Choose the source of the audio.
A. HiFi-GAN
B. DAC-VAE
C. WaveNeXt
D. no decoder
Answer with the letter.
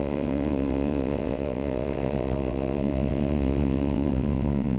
C